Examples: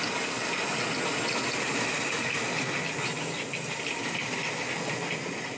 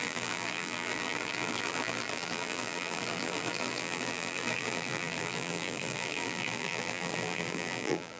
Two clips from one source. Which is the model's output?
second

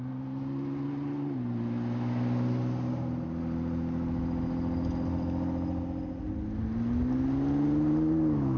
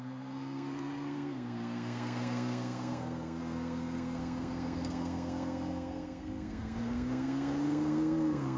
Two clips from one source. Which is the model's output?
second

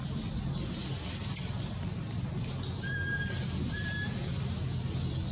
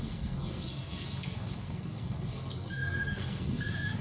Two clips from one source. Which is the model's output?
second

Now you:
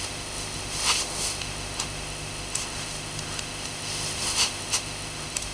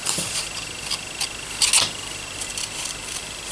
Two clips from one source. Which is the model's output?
first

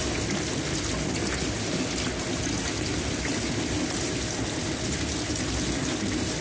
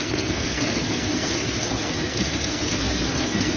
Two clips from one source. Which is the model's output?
second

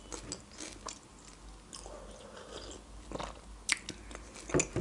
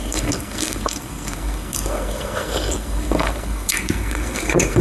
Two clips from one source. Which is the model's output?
second